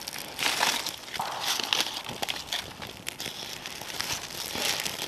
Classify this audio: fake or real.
real